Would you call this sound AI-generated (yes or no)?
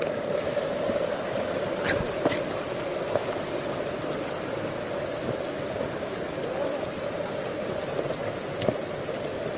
no